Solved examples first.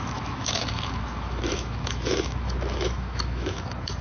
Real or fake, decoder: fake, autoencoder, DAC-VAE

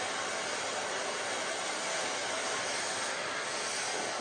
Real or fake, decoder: real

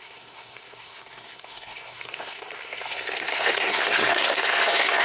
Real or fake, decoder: fake, codec, SNAC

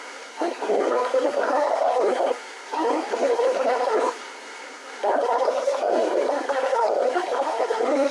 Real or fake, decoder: fake, codec, SNAC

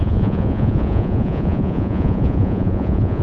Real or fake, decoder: fake, vocoder, Vocos